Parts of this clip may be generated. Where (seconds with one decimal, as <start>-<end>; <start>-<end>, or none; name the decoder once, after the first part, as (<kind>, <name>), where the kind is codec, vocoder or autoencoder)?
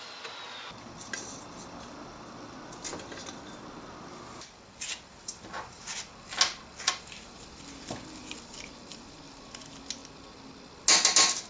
8.2-9.5 (vocoder, BigVGAN v2)